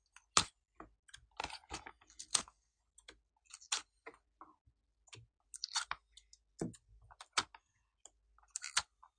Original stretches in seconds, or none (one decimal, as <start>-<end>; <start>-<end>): 0.0-2.3; 2.8-9.2